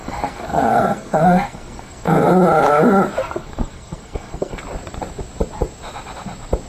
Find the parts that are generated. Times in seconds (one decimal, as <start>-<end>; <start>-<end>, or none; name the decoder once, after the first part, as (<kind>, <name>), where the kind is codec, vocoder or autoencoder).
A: 0.0-2.3 (codec, SNAC); 3.2-4.6